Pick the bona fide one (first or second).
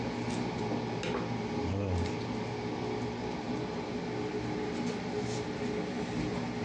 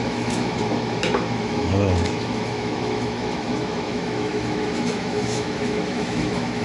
first